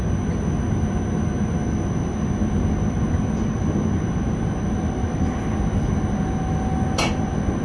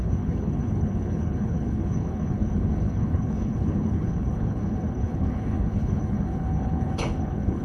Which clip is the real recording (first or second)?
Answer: first